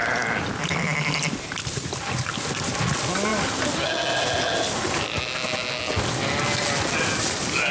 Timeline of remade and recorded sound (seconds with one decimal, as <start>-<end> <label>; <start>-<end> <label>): 0.0-7.7 recorded